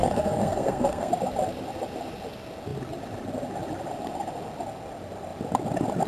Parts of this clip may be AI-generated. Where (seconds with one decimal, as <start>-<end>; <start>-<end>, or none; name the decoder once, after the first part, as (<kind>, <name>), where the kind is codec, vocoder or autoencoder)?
0.0-1.1 (codec, SNAC)